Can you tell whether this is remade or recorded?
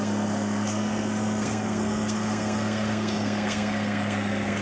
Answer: remade